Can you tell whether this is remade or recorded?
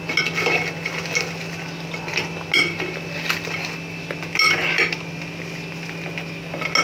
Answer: recorded